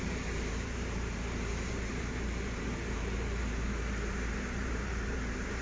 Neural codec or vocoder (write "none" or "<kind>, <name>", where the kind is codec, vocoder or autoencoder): vocoder, BigVGAN v2